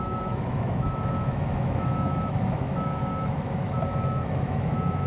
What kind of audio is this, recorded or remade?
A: remade